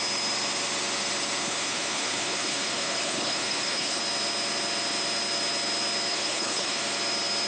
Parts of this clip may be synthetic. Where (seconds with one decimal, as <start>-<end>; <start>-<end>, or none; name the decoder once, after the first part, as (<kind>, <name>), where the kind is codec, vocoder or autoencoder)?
1.4-4.0 (codec, HILCodec); 6.1-6.8